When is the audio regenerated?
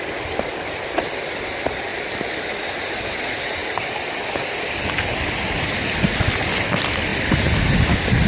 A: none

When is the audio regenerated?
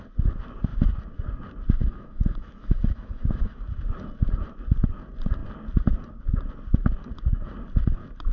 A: 1.8-3.6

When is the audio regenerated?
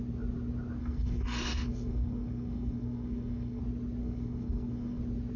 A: 0.8-3.6; 4.0-5.0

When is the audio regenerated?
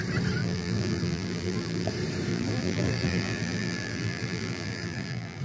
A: 0.4-1.9; 2.3-5.4